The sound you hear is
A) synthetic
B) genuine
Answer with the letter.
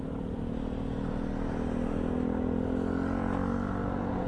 B